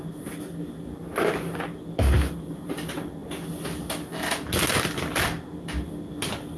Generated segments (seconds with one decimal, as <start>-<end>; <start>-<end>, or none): none